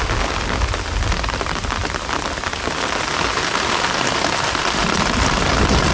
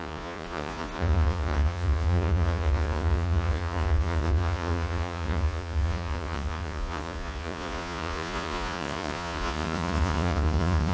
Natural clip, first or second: first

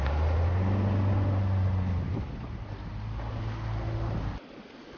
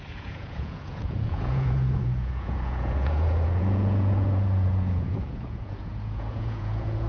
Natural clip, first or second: first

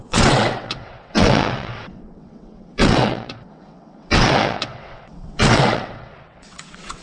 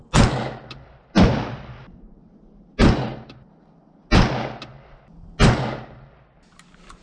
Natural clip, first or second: second